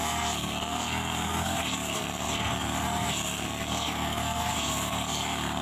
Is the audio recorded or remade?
remade